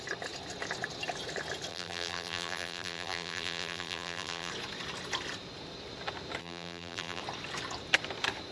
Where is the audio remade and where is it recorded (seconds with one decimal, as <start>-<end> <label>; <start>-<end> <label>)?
0.0-1.7 recorded; 1.7-4.5 remade; 4.5-6.4 recorded; 6.4-7.2 remade; 7.2-8.5 recorded